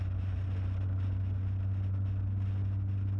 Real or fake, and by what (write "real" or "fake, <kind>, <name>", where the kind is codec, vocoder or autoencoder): real